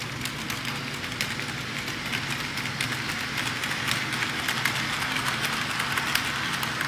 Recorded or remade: recorded